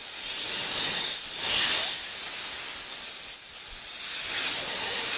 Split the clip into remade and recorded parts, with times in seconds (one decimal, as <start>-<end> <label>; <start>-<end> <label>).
0.0-5.2 recorded